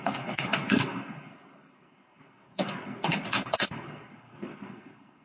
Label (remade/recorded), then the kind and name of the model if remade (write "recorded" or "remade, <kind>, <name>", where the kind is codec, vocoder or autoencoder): remade, codec, SNAC